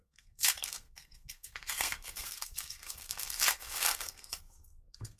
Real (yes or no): no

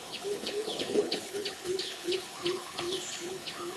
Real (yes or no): no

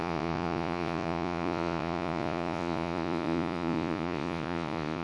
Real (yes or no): no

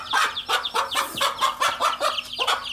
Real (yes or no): yes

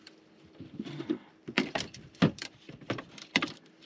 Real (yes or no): no